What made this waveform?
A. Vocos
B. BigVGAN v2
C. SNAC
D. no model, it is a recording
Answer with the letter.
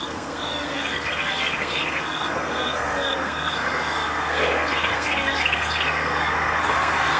C